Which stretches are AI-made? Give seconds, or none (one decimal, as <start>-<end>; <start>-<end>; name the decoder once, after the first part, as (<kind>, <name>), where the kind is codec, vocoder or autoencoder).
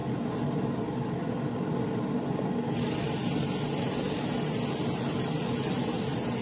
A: none